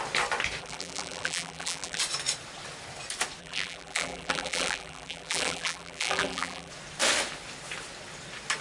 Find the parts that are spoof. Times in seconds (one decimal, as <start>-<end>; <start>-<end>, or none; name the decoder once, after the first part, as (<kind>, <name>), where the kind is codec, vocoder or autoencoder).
0.6-2.0 (vocoder, BigVGAN v2); 3.4-6.7